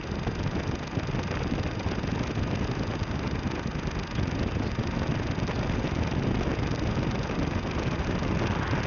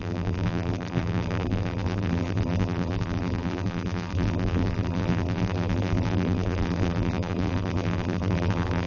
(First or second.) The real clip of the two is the first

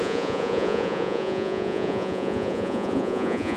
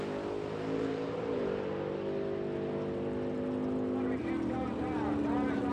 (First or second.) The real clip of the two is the second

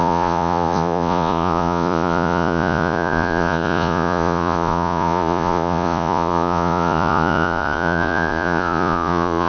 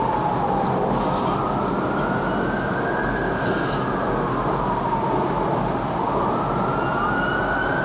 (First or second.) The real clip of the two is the second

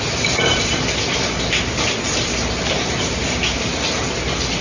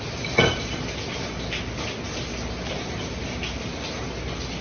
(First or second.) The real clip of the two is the second